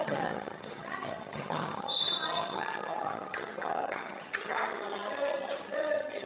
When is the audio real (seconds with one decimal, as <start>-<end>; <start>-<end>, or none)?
none